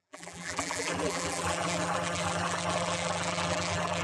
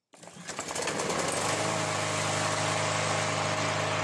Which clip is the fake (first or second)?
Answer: first